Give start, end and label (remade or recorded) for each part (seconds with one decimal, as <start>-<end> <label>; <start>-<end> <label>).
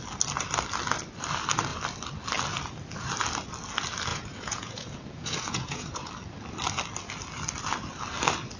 0.0-4.1 recorded; 4.1-6.1 remade; 6.1-8.6 recorded